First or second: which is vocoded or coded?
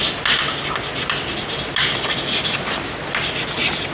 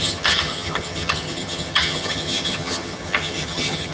second